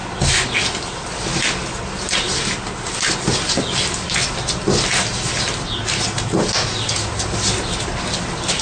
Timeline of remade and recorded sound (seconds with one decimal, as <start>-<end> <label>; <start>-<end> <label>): 0.0-8.6 recorded